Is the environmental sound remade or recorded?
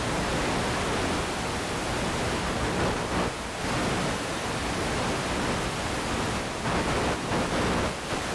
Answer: recorded